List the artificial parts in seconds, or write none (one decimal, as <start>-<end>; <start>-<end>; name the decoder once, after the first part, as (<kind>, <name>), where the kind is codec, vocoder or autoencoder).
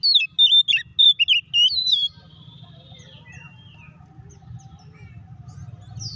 none